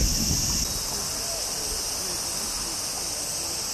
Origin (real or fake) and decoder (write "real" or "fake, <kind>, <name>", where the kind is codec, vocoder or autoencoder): real